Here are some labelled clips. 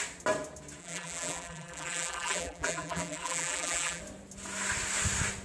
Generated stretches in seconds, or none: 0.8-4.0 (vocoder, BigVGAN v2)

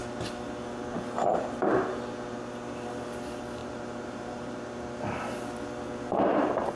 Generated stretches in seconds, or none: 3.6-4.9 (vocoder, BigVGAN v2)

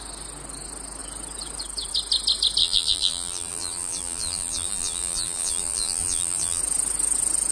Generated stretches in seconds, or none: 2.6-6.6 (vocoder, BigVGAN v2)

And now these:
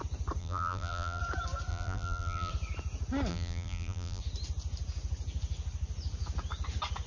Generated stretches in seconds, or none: 0.4-1.2 (vocoder, BigVGAN v2); 1.7-2.5; 3.3-4.2

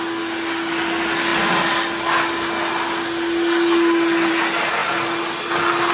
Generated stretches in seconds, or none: none

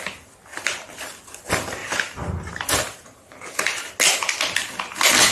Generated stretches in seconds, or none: 0.5-1.4 (vocoder, BigVGAN v2); 1.8-3.9